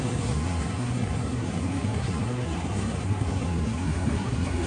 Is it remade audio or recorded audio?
remade